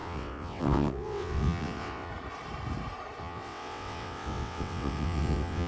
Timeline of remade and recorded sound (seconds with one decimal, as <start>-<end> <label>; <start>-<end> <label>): 0.0-2.1 remade; 2.1-3.2 recorded; 3.2-5.7 remade

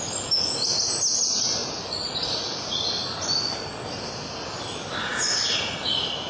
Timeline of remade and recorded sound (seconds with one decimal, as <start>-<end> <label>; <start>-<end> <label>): 0.0-6.3 recorded

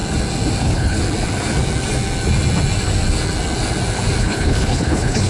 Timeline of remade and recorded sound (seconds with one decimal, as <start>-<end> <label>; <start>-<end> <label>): 0.0-0.6 recorded; 0.6-1.0 remade; 1.0-4.2 recorded; 4.2-5.3 remade